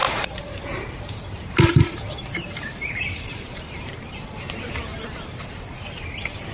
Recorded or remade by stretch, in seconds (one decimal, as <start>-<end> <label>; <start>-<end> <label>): 0.0-3.9 remade; 3.9-4.9 recorded; 4.9-5.5 remade; 5.5-6.5 recorded